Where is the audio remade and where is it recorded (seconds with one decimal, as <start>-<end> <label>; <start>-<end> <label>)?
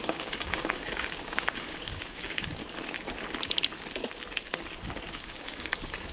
0.0-2.6 remade; 2.6-5.1 recorded; 5.1-6.1 remade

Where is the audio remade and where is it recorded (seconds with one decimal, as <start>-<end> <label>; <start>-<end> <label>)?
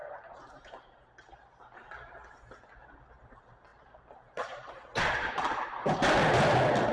0.0-0.7 remade; 0.7-3.7 recorded; 3.7-4.7 remade; 4.7-6.9 recorded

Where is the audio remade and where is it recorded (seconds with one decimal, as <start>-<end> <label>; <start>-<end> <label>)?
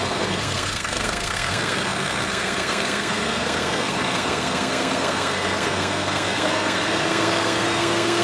0.0-8.2 remade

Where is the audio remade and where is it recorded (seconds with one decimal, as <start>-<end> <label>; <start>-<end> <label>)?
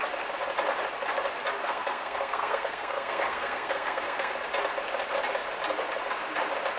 0.0-1.6 recorded; 1.6-4.3 remade; 4.3-6.8 recorded